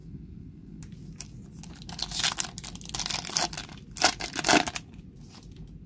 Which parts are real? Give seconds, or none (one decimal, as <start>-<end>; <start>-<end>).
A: 0.8-5.9